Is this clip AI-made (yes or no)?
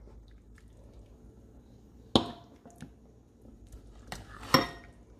no